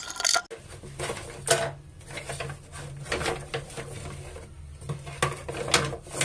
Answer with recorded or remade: recorded